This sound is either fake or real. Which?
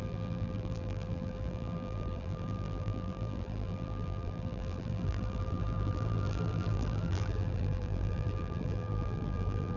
fake